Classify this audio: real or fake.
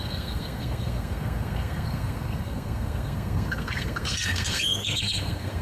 fake